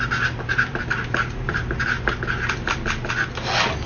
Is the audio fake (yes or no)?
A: no